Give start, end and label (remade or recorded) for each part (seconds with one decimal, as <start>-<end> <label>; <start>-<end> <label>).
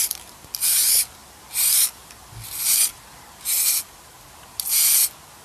0.0-5.4 recorded